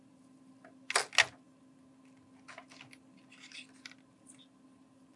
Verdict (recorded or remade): recorded